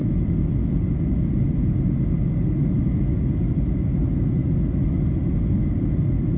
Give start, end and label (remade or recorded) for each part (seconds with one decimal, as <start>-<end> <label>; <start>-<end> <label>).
0.0-6.4 recorded